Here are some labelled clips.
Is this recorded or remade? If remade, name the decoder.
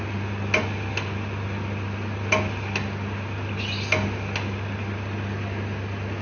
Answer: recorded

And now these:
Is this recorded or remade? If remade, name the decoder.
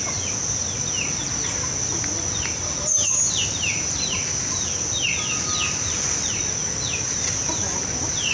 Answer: recorded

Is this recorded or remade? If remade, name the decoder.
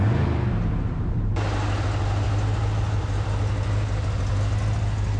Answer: recorded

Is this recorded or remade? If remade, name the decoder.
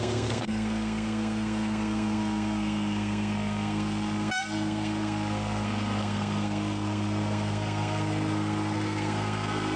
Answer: remade, codec, SNAC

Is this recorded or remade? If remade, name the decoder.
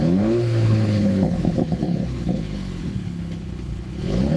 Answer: remade, codec, HILCodec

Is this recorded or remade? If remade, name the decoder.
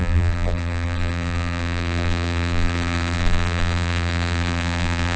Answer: remade, vocoder, BigVGAN v2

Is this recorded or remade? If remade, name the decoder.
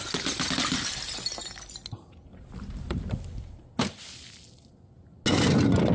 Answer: recorded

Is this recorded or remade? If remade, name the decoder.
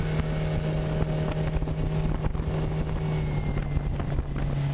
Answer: recorded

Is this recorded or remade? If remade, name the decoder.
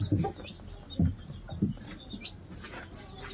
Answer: recorded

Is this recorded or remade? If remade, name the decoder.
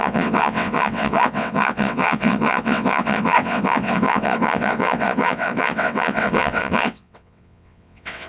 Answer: remade, vocoder, WaveNeXt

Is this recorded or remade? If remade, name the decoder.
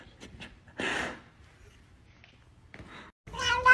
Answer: recorded